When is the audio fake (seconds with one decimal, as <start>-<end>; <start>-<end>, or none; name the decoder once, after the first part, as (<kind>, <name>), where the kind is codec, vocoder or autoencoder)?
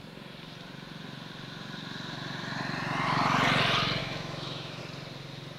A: 4.0-4.8 (autoencoder, DAC-VAE)